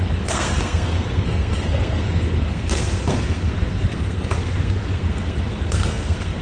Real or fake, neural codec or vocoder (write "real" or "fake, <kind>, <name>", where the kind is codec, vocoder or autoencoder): fake, codec, SNAC